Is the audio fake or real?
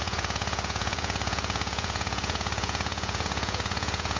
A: fake